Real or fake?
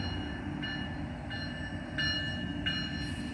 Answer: real